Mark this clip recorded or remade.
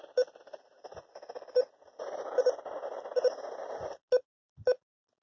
recorded